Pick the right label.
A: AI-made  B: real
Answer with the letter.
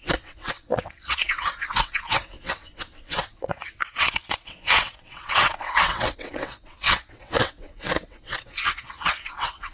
A